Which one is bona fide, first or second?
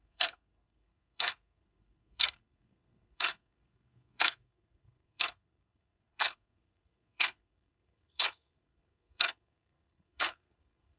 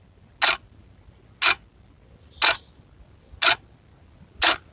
second